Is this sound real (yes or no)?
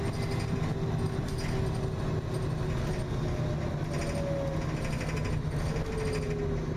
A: yes